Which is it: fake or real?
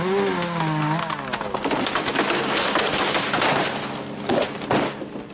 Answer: real